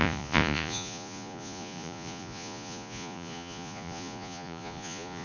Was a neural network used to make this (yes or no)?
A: yes